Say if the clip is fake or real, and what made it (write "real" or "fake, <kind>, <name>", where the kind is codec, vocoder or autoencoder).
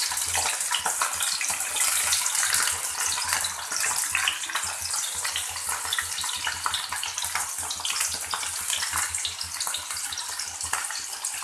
real